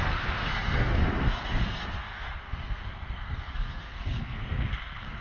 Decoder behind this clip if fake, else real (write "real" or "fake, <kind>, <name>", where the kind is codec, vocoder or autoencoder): fake, codec, SNAC